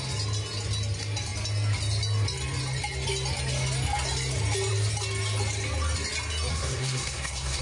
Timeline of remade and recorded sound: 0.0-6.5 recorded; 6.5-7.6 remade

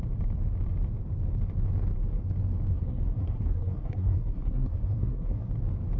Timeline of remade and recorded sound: 0.0-2.7 recorded; 2.7-5.5 remade; 5.5-6.0 recorded

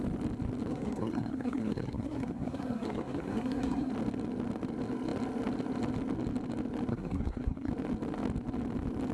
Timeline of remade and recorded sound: 0.0-0.7 recorded; 0.7-3.9 remade; 3.9-6.9 recorded; 6.9-7.7 remade; 7.7-9.1 recorded

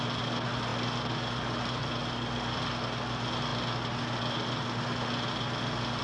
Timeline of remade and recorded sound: 0.0-6.0 recorded

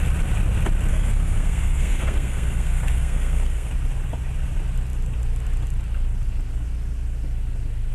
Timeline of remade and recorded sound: 0.0-0.9 recorded; 0.9-3.7 remade; 3.7-7.9 recorded

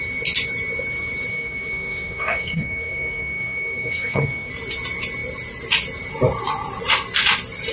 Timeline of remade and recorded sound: 0.0-1.3 recorded; 1.3-4.5 remade; 4.5-7.7 recorded

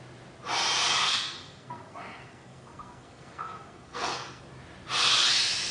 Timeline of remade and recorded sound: 0.0-1.0 recorded; 1.0-4.4 remade; 4.4-5.7 recorded

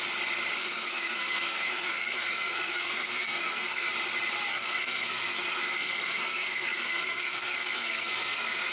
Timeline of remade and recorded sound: 0.0-0.6 recorded; 0.6-3.9 remade; 3.9-4.5 recorded; 4.5-8.7 remade